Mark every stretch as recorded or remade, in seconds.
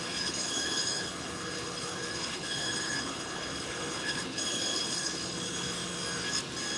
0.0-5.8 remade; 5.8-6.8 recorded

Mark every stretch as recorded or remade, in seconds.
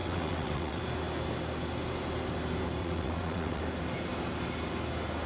0.0-0.8 remade; 0.8-2.8 recorded; 2.8-3.6 remade; 3.6-5.3 recorded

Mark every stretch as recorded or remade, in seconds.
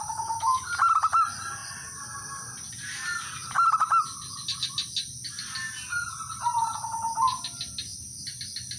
0.0-0.6 remade; 0.6-8.8 recorded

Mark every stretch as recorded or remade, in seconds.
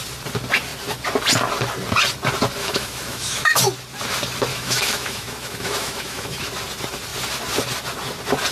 0.0-2.6 recorded; 2.6-3.6 remade; 3.6-4.5 recorded; 4.5-6.5 remade; 6.5-8.5 recorded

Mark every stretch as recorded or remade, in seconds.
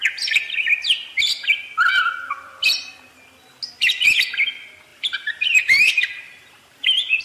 0.0-4.9 recorded; 4.9-7.2 remade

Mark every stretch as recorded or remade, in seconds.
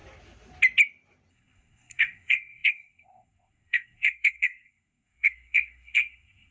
0.0-1.3 recorded; 1.3-6.5 remade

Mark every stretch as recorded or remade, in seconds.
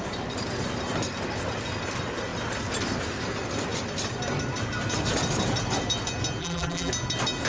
0.0-6.4 recorded; 6.4-6.9 remade; 6.9-7.5 recorded